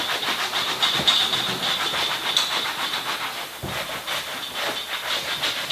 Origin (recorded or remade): recorded